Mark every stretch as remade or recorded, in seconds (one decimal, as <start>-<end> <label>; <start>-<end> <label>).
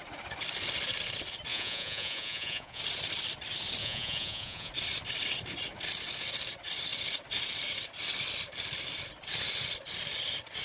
0.0-1.5 recorded; 1.5-2.8 remade; 2.8-3.8 recorded; 3.8-4.7 remade; 4.7-10.6 recorded